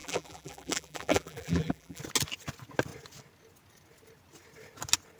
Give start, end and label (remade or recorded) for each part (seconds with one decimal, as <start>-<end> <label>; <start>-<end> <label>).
0.0-2.0 remade; 2.0-5.2 recorded